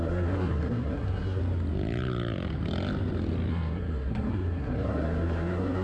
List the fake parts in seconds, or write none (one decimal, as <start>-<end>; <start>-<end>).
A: 0.0-1.4; 3.5-5.8